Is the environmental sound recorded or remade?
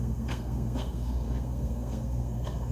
remade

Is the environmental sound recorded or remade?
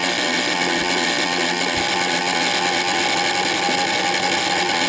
recorded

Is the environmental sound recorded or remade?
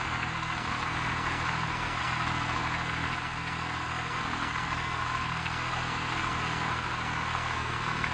remade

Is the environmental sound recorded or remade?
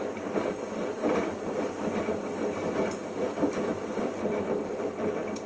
recorded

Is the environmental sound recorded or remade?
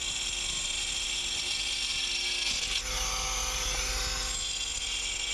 recorded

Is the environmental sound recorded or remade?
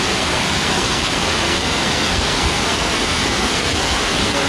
remade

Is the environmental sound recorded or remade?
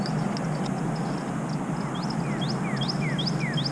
recorded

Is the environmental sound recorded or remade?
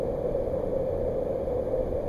recorded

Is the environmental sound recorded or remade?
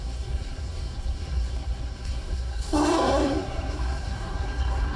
remade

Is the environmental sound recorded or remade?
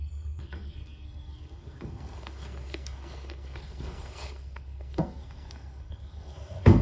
remade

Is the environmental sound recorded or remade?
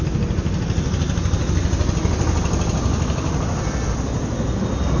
recorded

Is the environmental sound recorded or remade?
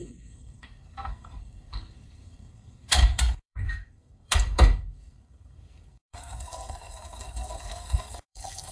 remade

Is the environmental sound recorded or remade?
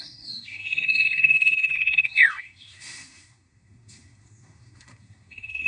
remade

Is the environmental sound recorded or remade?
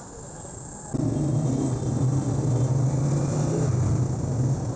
recorded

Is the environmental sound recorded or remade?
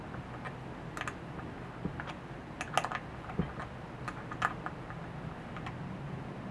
recorded